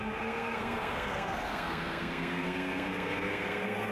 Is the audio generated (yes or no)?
yes